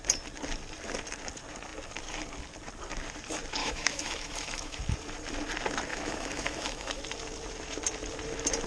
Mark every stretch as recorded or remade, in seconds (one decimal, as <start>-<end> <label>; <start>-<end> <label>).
0.0-3.6 recorded; 3.6-4.8 remade; 4.8-5.9 recorded; 5.9-7.0 remade; 7.0-8.7 recorded